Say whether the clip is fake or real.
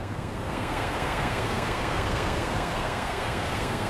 fake